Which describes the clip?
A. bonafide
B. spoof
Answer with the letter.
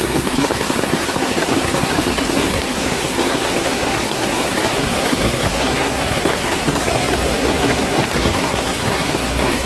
B